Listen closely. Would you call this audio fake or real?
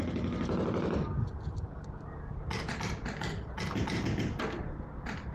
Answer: real